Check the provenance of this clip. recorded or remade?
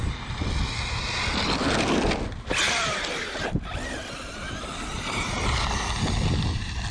recorded